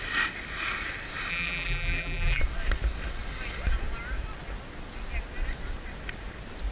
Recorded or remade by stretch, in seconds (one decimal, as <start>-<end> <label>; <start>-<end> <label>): 0.0-1.3 recorded; 1.3-2.4 remade; 2.4-6.7 recorded